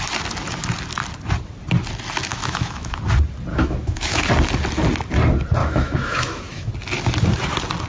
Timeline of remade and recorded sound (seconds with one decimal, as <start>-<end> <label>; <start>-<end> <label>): 0.0-2.3 recorded; 2.3-3.0 remade; 3.0-3.5 recorded; 3.5-4.2 remade; 4.2-5.6 recorded; 5.6-6.7 remade; 6.7-7.9 recorded